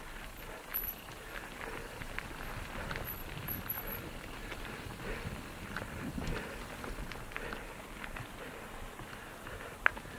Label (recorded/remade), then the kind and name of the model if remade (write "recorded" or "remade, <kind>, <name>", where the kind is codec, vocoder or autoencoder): recorded